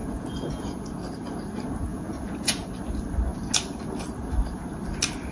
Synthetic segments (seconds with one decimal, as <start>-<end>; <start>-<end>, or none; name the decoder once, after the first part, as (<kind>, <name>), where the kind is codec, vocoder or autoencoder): 0.0-0.8 (vocoder, Vocos); 1.9-2.7